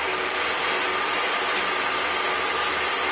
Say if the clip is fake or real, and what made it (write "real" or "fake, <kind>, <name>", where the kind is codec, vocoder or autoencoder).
real